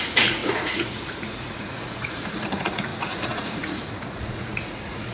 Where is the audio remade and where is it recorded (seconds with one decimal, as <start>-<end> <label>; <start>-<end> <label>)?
0.0-5.1 remade